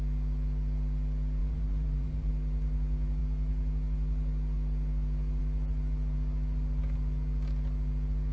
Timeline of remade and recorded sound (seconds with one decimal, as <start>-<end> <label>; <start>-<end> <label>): 0.0-1.4 recorded; 1.4-2.3 remade; 2.3-8.3 recorded